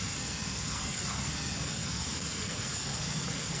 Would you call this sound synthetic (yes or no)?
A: yes